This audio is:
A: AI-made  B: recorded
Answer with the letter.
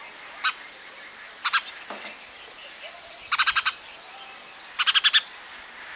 B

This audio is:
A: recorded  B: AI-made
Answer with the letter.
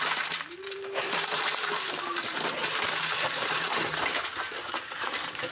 B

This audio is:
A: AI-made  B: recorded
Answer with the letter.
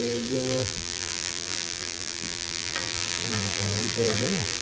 A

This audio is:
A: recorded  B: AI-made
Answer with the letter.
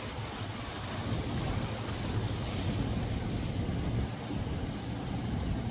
A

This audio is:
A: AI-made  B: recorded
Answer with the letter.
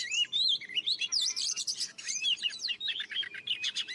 A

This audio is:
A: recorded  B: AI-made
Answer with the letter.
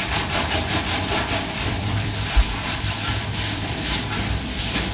B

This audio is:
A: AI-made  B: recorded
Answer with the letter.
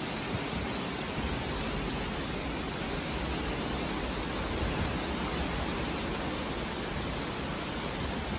B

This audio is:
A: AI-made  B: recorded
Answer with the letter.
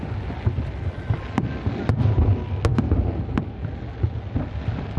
B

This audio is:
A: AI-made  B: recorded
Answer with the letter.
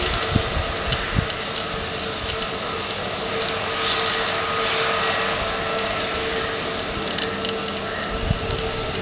B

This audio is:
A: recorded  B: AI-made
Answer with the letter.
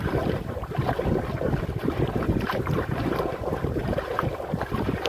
B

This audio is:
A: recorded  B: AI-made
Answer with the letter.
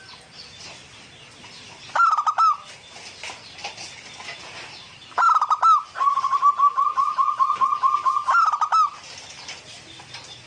A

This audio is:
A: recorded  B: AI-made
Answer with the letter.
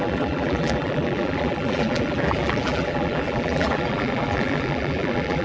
B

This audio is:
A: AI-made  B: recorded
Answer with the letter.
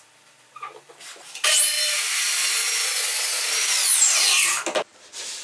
B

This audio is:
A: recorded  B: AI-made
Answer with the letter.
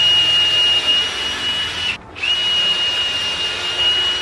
A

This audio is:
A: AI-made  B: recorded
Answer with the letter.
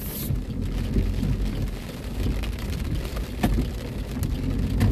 B